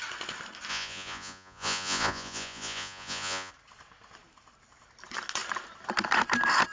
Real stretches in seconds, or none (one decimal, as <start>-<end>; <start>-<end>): 0.0-0.7; 3.5-6.7